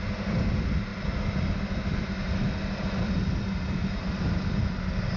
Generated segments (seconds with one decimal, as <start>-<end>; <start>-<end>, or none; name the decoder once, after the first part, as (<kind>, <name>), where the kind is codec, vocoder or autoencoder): none